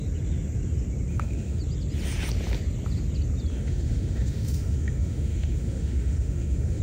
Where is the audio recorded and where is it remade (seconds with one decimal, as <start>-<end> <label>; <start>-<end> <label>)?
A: 0.0-1.1 recorded; 1.1-1.6 remade; 1.6-3.5 recorded; 3.5-6.8 remade